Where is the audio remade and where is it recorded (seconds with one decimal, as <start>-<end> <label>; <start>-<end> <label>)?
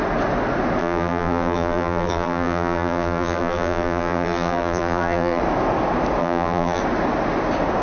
0.0-0.8 recorded; 0.8-5.4 remade; 5.4-6.2 recorded; 6.2-6.8 remade; 6.8-7.8 recorded